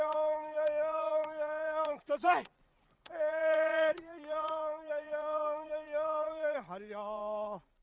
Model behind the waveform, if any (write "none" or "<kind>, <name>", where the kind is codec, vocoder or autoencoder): vocoder, Vocos